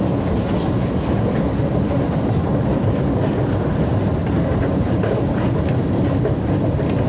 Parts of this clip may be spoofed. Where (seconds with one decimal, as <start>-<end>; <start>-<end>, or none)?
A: none